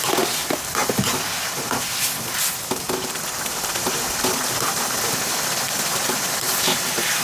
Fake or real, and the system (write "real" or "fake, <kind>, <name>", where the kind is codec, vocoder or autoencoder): real